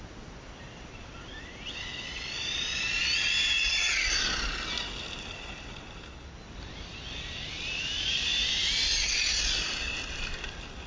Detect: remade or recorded recorded